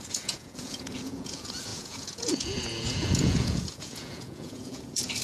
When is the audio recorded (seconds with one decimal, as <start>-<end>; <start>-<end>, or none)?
none